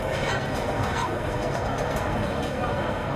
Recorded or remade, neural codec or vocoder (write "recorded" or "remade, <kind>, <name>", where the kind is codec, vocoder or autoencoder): remade, codec, SNAC